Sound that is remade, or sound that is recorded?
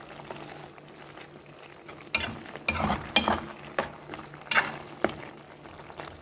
recorded